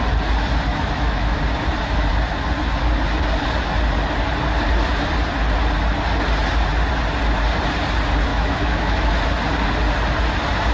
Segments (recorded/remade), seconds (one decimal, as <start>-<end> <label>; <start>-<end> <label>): 0.0-0.7 recorded; 0.7-1.4 remade; 1.4-8.3 recorded; 8.3-9.1 remade; 9.1-10.7 recorded